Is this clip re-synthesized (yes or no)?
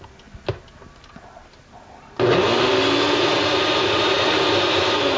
no